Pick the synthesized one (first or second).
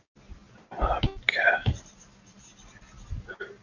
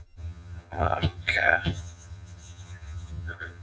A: second